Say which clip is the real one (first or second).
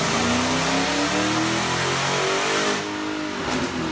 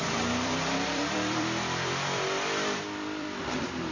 first